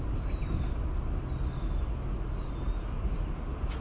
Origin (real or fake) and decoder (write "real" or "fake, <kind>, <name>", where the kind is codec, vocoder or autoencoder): real